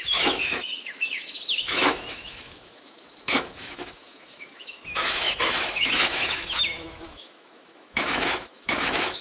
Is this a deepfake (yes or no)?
yes